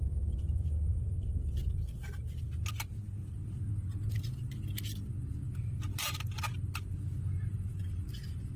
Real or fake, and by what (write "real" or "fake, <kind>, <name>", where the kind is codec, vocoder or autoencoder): real